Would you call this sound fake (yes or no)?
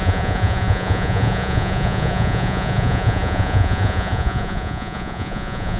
yes